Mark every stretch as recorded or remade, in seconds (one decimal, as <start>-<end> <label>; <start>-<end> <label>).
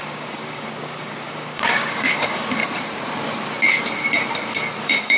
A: 0.0-2.6 remade; 2.6-4.8 recorded; 4.8-5.2 remade